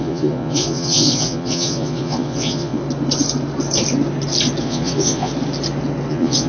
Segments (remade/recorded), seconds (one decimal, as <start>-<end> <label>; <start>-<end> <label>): 0.0-2.8 remade; 2.8-4.6 recorded; 4.6-5.3 remade; 5.3-6.1 recorded; 6.1-6.5 remade